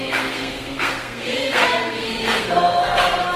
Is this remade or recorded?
remade